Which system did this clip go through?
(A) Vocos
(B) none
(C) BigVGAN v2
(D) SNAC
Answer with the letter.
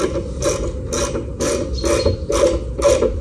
B